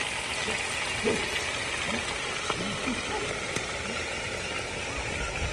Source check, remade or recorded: recorded